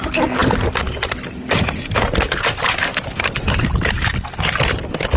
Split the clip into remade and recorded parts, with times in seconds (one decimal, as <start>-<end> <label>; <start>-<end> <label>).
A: 0.0-2.9 recorded; 2.9-4.1 remade; 4.1-5.2 recorded

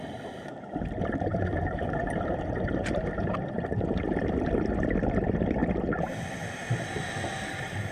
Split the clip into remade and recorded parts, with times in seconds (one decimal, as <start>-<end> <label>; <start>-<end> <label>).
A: 0.0-1.3 recorded; 1.3-3.5 remade; 3.5-7.9 recorded

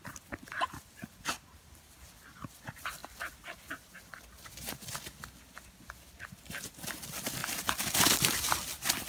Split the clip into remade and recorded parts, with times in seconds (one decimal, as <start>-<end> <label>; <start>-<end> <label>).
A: 0.0-9.1 recorded

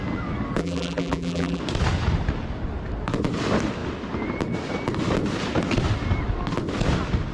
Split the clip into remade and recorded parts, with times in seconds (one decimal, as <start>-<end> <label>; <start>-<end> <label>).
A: 0.0-0.6 recorded; 0.6-1.6 remade; 1.6-7.3 recorded

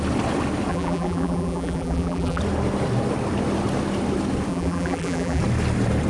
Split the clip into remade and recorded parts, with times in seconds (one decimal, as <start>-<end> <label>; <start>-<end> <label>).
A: 0.0-0.7 recorded; 0.7-2.4 remade; 2.4-4.5 recorded; 4.5-5.4 remade; 5.4-6.1 recorded

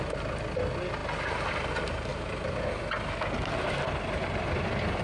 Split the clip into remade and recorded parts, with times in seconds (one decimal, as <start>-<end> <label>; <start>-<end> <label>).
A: 0.0-1.0 recorded; 1.0-1.7 remade; 1.7-2.1 recorded; 2.1-5.0 remade

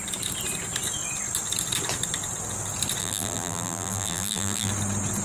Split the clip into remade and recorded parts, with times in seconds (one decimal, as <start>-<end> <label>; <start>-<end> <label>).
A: 0.0-3.0 recorded; 3.0-4.7 remade; 4.7-5.2 recorded